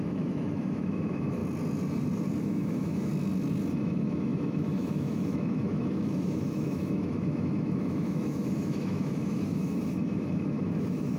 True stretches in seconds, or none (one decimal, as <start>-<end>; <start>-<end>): 1.4-2.4; 3.1-3.7